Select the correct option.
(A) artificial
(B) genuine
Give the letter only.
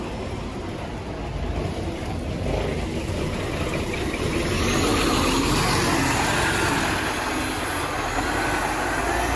B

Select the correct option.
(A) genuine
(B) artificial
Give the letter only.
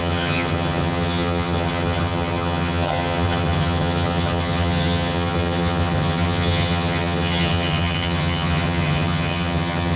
B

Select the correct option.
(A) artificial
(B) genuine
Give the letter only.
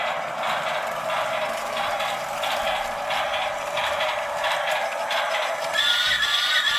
B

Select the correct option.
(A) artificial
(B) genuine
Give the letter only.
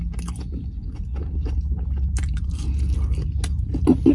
B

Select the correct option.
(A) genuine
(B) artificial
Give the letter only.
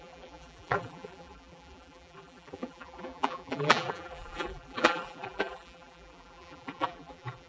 B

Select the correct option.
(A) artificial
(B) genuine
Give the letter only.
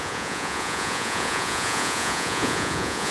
A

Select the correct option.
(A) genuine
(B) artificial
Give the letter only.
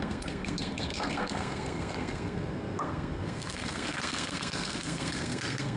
B